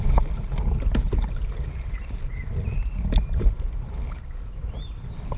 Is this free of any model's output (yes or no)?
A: yes